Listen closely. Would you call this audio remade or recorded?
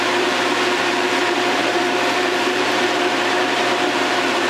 remade